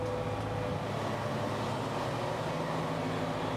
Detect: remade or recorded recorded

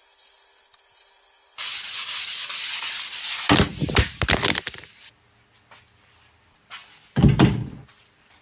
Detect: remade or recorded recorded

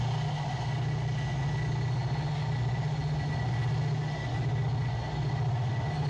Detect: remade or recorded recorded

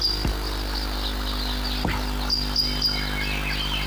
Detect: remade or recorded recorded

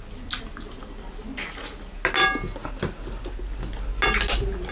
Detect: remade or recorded recorded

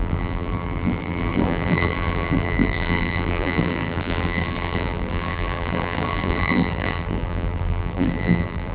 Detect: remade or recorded remade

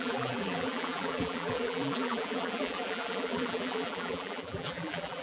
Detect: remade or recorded remade